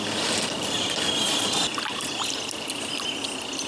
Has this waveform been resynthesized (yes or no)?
no